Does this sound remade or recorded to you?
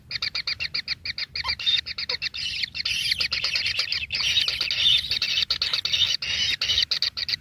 recorded